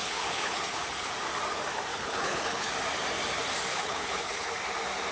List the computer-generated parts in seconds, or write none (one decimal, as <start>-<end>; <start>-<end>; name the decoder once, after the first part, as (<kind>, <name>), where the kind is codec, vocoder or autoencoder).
0.0-1.1 (codec, HILCodec); 1.9-2.7; 3.7-4.5

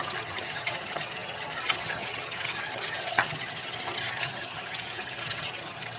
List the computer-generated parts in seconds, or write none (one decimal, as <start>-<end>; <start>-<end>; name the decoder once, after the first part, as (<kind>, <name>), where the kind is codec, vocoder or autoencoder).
0.0-6.0 (vocoder, HiFi-GAN)

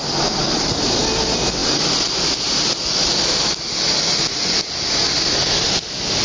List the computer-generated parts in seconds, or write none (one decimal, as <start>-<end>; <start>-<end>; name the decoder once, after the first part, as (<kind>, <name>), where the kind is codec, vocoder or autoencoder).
none

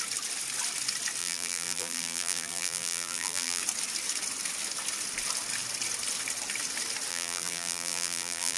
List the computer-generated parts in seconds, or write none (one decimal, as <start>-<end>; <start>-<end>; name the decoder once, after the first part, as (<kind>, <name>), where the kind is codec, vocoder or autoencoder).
1.2-3.6 (vocoder, BigVGAN v2); 7.1-8.6

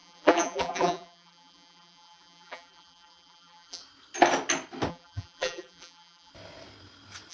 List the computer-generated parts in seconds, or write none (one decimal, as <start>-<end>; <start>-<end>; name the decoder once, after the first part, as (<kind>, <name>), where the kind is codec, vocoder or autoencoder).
0.0-3.8 (vocoder, BigVGAN v2); 4.9-6.3

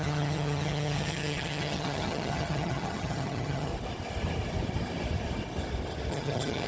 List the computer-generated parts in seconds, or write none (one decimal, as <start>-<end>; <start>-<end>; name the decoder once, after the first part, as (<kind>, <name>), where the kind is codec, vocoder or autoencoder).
0.0-3.7 (vocoder, HiFi-GAN); 6.1-6.7